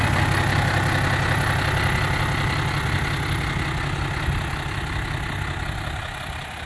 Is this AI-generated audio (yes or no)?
no